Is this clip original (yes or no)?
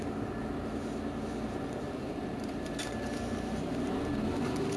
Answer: yes